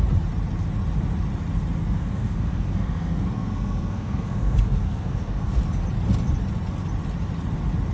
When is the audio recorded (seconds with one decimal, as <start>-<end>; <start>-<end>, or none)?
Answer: 0.0-1.8; 5.6-7.9